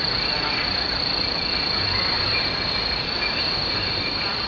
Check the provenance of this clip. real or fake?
real